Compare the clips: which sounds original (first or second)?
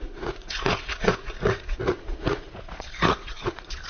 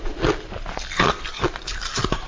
second